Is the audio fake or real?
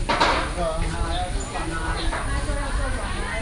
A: real